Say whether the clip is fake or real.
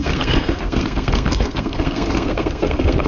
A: fake